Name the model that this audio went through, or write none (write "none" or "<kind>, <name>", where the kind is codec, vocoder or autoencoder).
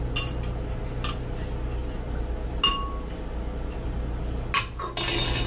none